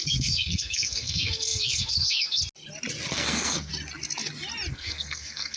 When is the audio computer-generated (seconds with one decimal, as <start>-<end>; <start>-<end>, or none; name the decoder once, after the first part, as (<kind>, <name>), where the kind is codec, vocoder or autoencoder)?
0.0-2.4 (codec, SNAC); 3.1-3.7; 4.7-5.6